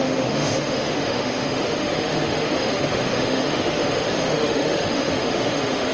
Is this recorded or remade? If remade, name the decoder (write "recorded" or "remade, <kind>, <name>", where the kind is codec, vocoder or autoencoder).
remade, autoencoder, DAC-VAE